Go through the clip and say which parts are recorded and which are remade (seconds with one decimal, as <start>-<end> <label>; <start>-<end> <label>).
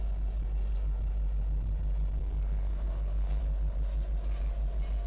0.0-2.2 recorded; 2.2-3.4 remade; 3.4-5.1 recorded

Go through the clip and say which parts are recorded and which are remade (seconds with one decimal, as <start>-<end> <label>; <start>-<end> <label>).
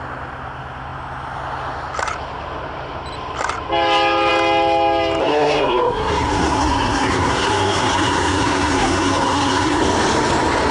0.0-5.2 recorded; 5.2-9.8 remade; 9.8-10.7 recorded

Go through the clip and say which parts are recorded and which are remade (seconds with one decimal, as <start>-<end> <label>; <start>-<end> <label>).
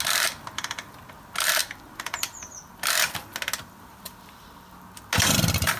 0.0-1.6 recorded; 1.6-2.8 remade; 2.8-5.8 recorded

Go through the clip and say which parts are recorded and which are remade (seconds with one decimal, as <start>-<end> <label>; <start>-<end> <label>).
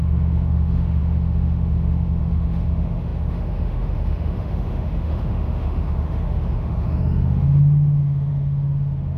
0.0-9.2 remade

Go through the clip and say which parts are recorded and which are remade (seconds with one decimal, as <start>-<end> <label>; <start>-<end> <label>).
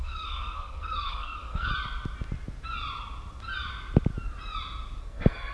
0.0-1.7 remade; 1.7-5.0 recorded; 5.0-5.5 remade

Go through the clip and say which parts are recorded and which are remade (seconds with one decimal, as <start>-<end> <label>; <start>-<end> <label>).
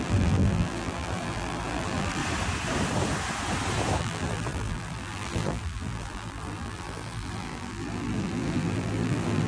0.0-2.2 remade; 2.2-4.0 recorded; 4.0-9.5 remade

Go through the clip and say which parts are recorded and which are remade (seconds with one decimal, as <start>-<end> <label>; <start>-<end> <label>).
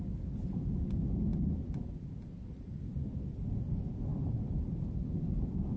0.0-5.8 recorded